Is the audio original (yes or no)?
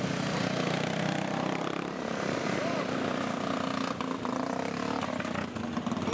yes